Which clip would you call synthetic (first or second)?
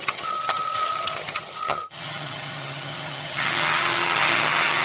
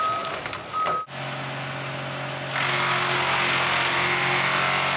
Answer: first